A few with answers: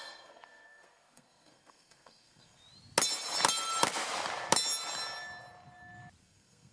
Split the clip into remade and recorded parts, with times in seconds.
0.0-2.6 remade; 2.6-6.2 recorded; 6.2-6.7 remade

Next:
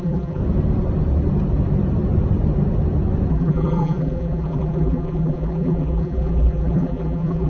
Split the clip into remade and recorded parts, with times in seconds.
0.0-0.4 remade; 0.4-3.3 recorded; 3.3-7.5 remade

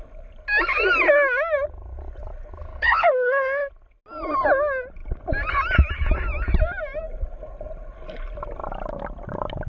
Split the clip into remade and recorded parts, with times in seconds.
0.0-2.7 recorded; 2.7-3.7 remade; 3.7-9.7 recorded

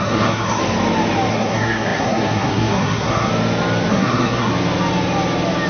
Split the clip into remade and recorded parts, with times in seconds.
0.0-0.6 remade; 0.6-1.3 recorded; 1.3-3.3 remade; 3.3-3.9 recorded; 3.9-4.5 remade; 4.5-5.7 recorded

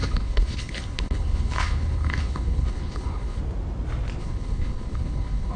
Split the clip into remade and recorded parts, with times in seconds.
0.0-3.4 remade; 3.4-4.2 recorded; 4.2-5.6 remade

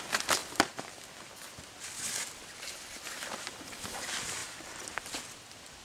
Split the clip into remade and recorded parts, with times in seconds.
0.0-5.8 recorded

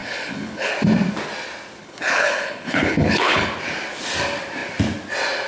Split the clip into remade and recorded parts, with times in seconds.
0.0-0.7 remade; 0.7-1.8 recorded; 1.8-3.5 remade; 3.5-5.5 recorded